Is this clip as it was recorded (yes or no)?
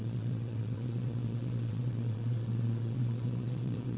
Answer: no